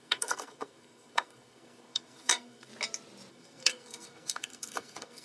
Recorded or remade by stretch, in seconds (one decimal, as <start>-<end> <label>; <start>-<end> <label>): 0.0-2.7 remade; 2.7-3.3 recorded; 3.3-5.2 remade